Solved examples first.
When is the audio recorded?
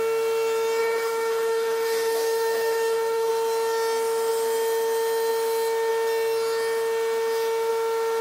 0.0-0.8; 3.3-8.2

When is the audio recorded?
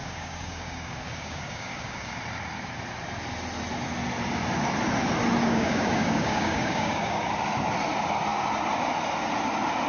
2.2-5.4; 7.3-9.9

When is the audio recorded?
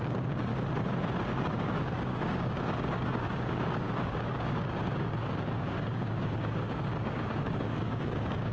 0.5-1.4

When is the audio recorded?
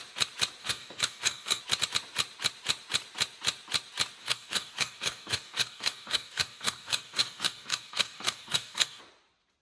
0.0-0.6; 1.6-4.2; 9.0-9.6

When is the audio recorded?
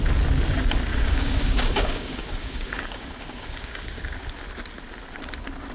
0.0-0.9; 4.2-5.7